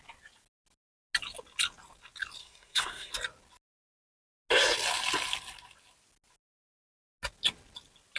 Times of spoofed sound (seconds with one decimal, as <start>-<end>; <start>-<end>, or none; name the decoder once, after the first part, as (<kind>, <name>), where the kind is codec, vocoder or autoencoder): 2.4-3.1 (codec, SNAC)